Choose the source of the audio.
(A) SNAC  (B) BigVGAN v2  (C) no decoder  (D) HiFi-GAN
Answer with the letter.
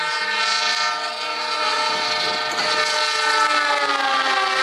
C